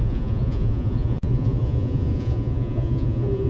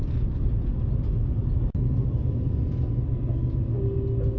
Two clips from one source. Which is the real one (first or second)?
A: second